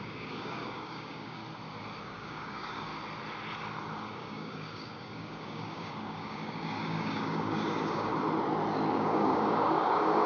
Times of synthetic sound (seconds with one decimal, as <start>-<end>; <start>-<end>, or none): 0.0-1.4; 2.0-2.9; 4.1-8.1; 8.9-10.3

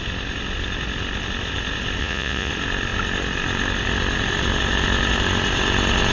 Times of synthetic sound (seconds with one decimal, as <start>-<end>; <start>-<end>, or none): 2.0-2.5

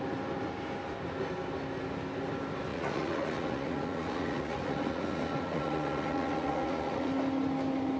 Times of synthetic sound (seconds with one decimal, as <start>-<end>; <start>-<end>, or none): 2.7-7.1

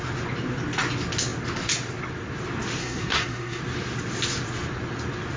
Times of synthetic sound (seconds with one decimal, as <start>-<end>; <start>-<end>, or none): 2.8-3.6

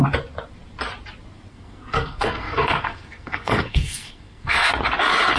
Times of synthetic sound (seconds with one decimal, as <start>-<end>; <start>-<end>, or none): 1.5-4.7